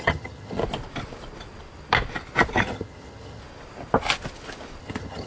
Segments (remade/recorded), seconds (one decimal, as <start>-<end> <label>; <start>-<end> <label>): 0.0-0.6 remade; 0.6-2.6 recorded; 2.6-3.4 remade; 3.4-4.8 recorded; 4.8-5.3 remade